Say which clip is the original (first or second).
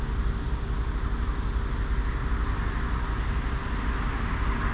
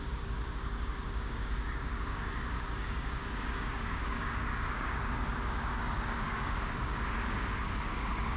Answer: first